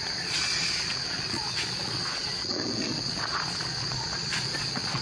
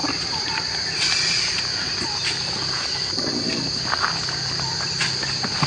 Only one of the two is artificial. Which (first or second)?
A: first